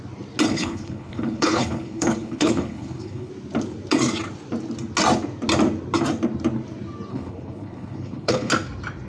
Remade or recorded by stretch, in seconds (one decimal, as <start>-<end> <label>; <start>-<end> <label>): 0.0-0.5 recorded; 0.5-3.3 remade; 3.3-7.1 recorded; 7.1-8.5 remade; 8.5-9.1 recorded

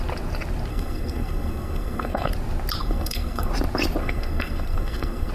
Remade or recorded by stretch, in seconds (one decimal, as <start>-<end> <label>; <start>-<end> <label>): 0.0-0.7 recorded; 0.7-2.3 remade; 2.3-2.8 recorded; 2.8-3.5 remade; 3.5-4.0 recorded; 4.0-5.3 remade

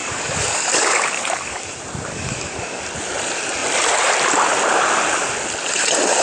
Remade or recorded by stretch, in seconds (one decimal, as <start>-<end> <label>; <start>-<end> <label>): 0.0-1.6 remade; 1.6-2.1 recorded; 2.1-2.8 remade; 2.8-6.2 recorded